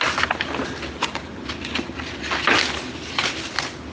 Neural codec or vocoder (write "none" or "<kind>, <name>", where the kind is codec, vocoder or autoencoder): none